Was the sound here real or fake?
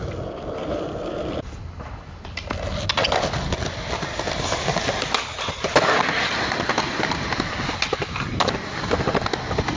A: real